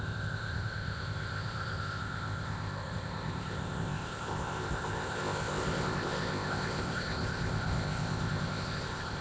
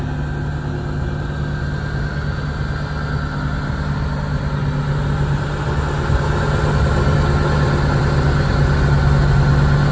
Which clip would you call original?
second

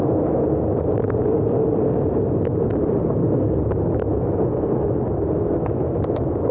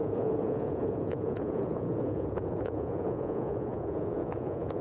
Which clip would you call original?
first